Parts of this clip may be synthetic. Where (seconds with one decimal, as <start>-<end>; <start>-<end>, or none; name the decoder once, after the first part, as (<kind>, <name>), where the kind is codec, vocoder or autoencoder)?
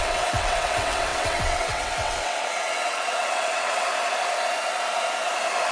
0.0-3.9 (vocoder, WaveNeXt)